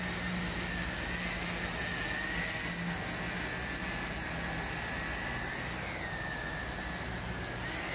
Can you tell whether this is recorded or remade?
recorded